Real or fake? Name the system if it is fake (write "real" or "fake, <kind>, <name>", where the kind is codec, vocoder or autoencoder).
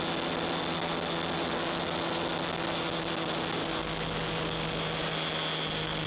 real